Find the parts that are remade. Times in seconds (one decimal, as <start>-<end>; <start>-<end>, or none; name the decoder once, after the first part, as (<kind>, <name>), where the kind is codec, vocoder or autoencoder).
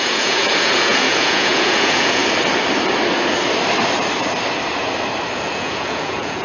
0.0-2.2 (vocoder, Vocos); 5.5-6.4